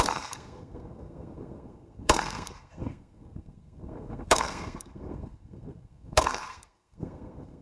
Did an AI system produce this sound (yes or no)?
yes